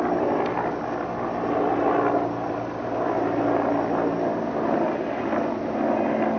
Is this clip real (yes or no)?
yes